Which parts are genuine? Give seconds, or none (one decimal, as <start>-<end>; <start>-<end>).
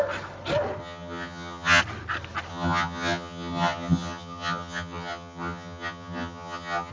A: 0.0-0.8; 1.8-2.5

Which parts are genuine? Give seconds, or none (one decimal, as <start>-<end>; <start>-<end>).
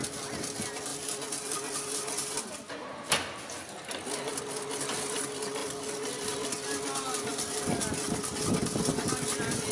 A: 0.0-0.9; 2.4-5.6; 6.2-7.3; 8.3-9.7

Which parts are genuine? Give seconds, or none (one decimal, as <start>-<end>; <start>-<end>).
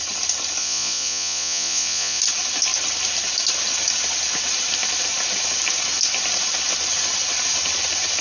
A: 0.0-0.6; 2.2-8.2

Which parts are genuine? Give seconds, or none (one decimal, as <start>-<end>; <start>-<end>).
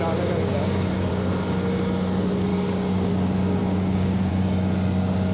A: 0.0-0.5; 1.1-2.5; 3.1-3.6; 4.3-5.3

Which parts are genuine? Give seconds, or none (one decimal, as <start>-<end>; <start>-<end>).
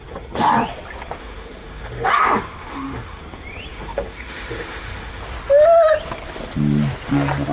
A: 0.0-1.2; 2.1-2.6; 3.2-3.7; 5.2-7.5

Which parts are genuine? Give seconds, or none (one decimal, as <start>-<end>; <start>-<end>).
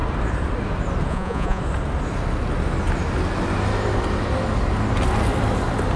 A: 0.0-1.1; 1.6-6.0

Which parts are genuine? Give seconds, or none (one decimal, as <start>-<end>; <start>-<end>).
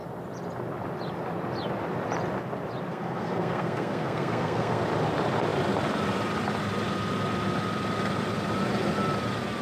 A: 0.0-2.9; 4.8-9.6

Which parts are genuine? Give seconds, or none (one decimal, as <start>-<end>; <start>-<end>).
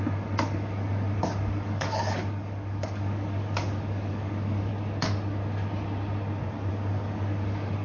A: 4.7-6.7